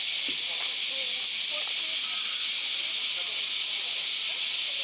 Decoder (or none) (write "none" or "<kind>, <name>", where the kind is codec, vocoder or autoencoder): none